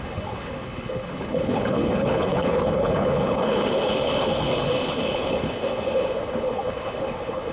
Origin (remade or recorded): remade